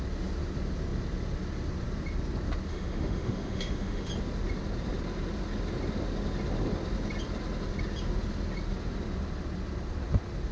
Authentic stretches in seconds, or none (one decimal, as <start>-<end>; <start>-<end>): 0.0-2.7; 4.1-10.5